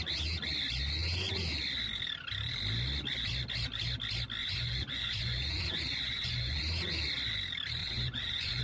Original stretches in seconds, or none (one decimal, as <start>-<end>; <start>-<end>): 0.0-4.4; 6.6-7.8